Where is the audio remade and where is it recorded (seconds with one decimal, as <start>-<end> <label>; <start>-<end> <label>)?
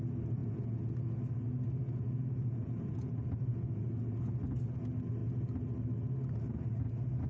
0.0-0.4 recorded; 0.4-0.9 remade; 0.9-1.8 recorded; 1.8-3.1 remade; 3.1-3.5 recorded; 3.5-4.3 remade; 4.3-7.3 recorded